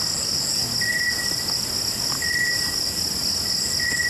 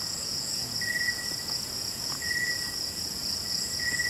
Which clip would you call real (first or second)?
first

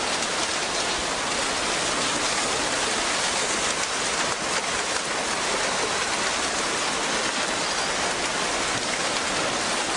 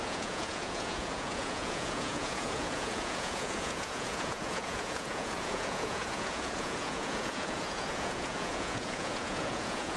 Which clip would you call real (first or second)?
first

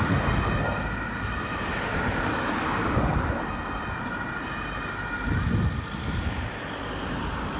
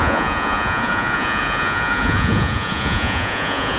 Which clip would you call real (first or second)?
first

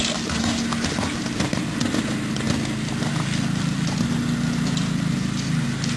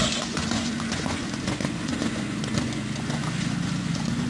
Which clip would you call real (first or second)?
first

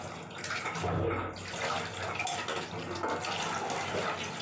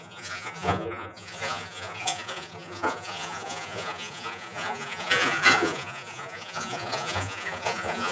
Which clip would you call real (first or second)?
first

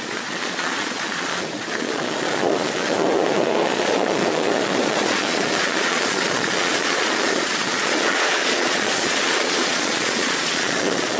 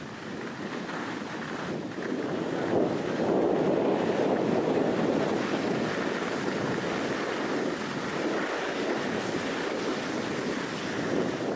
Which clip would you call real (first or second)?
second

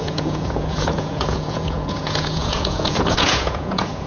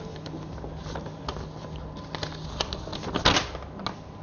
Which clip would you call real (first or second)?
second